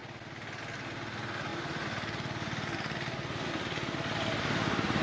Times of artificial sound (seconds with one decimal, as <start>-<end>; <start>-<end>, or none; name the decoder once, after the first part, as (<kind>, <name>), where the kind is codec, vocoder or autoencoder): none